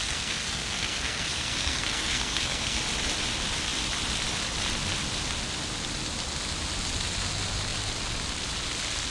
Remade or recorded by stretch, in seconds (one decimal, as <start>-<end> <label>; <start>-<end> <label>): 0.0-2.8 remade; 2.8-9.1 recorded